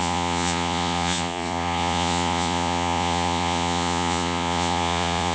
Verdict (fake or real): fake